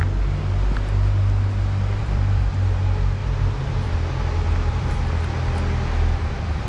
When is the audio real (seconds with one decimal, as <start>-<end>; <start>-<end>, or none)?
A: 0.0-2.0; 2.5-3.2; 4.9-6.7